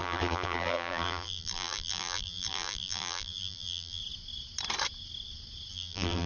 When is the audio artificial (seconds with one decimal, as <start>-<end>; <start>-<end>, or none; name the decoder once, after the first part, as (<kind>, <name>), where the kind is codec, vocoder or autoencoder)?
0.0-4.0 (vocoder, BigVGAN v2); 5.7-6.3